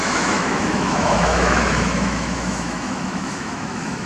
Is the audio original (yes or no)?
no